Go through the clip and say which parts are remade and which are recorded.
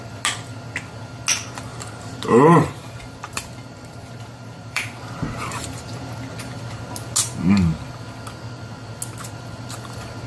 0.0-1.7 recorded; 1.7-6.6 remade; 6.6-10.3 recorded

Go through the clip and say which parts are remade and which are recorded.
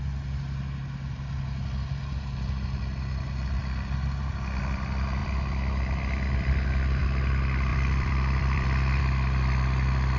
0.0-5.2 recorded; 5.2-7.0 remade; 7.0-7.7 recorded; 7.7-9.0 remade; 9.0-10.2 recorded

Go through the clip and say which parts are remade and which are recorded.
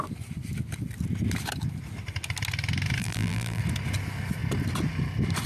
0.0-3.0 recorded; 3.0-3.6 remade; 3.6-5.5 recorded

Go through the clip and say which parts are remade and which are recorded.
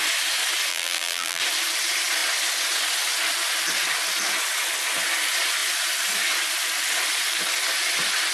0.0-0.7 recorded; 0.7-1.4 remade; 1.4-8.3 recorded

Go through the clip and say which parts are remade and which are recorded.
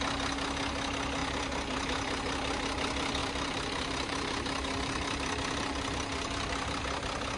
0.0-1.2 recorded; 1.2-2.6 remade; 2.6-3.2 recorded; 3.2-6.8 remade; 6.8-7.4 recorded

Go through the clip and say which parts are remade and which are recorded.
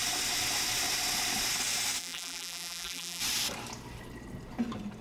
0.0-2.0 recorded; 2.0-3.2 remade; 3.2-5.0 recorded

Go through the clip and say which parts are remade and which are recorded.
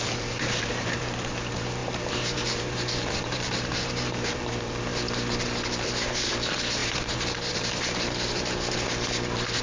0.0-4.9 remade; 4.9-5.4 recorded; 5.4-9.6 remade